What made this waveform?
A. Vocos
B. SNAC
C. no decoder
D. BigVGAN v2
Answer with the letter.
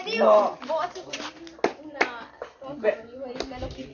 C